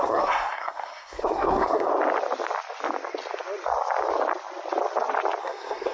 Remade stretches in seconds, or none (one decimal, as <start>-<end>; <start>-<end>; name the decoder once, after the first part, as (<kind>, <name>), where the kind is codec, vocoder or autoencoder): 0.0-1.9 (codec, SNAC); 5.4-5.9